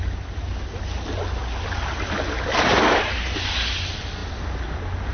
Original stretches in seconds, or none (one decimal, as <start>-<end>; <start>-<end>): 0.0-5.1